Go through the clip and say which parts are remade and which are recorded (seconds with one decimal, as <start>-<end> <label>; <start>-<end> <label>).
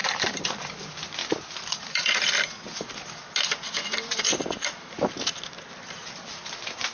0.0-0.6 remade; 0.6-4.3 recorded; 4.3-5.4 remade; 5.4-6.9 recorded